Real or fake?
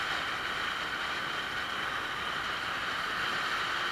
real